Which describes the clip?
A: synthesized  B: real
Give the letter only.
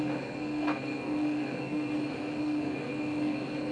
A